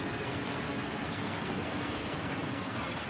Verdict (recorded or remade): remade